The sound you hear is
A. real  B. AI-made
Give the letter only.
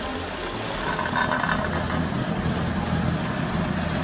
A